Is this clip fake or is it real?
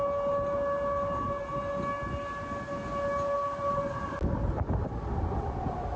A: real